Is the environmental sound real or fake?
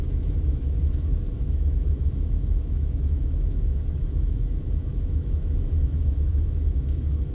fake